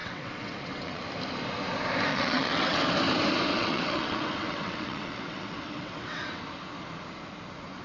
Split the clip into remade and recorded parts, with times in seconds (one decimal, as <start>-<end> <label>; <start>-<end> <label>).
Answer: 0.0-1.0 remade; 1.0-2.1 recorded; 2.1-2.8 remade; 2.8-3.5 recorded; 3.5-6.4 remade; 6.4-7.8 recorded